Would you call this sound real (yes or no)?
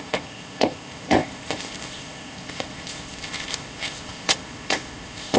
no